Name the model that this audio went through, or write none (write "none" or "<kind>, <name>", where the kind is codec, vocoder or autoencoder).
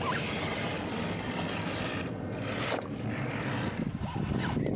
none